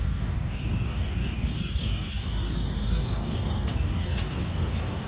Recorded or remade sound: remade